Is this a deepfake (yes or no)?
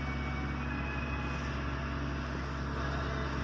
no